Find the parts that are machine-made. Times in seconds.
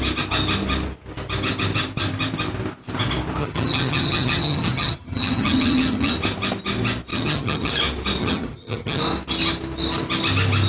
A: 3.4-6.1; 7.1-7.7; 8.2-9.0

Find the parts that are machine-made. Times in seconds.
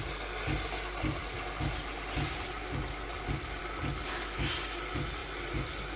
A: none